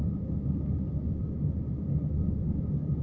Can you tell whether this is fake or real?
real